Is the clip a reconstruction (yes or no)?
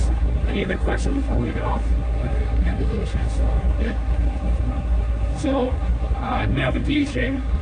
yes